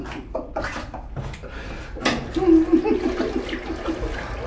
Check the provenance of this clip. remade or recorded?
recorded